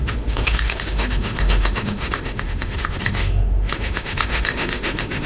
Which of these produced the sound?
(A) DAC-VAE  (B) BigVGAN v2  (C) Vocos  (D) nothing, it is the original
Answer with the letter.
A